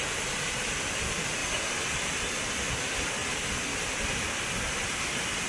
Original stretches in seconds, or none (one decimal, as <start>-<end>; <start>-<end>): 0.0-5.5